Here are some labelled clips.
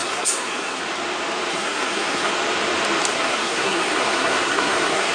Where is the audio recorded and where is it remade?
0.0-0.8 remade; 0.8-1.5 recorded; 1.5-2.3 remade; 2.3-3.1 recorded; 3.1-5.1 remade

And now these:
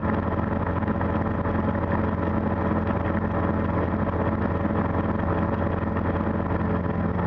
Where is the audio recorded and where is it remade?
0.0-7.3 recorded

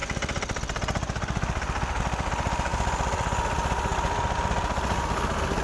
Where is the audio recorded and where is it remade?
0.0-5.6 recorded

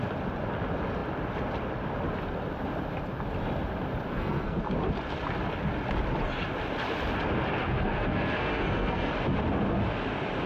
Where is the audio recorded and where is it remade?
0.0-4.1 recorded; 4.1-4.6 remade; 4.6-7.6 recorded; 7.6-9.1 remade; 9.1-10.5 recorded

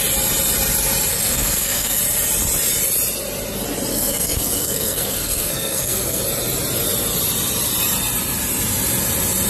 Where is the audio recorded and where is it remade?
0.0-1.1 recorded; 1.1-2.0 remade; 2.0-3.9 recorded; 3.9-6.2 remade; 6.2-9.5 recorded

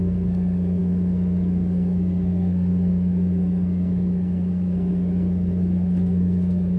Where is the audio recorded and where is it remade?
0.0-6.8 remade

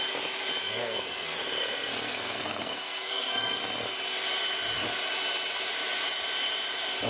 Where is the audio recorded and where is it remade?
0.0-0.6 recorded; 0.6-3.6 remade; 3.6-7.1 recorded